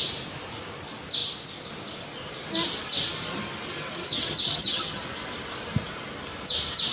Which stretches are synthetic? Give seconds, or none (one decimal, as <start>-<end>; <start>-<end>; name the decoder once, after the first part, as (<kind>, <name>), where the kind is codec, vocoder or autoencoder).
4.1-5.0 (vocoder, HiFi-GAN)